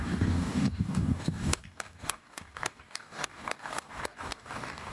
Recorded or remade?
remade